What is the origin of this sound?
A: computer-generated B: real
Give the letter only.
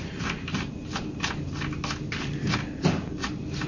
B